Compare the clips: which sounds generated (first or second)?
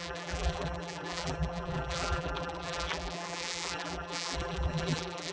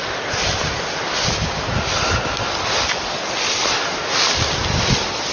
first